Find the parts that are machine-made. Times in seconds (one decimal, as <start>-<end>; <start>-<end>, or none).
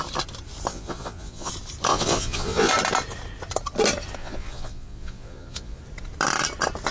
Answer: 0.7-1.5; 1.9-2.7; 4.2-5.8